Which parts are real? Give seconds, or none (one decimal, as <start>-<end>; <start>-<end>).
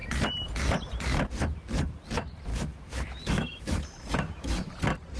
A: 0.0-2.5; 4.7-5.2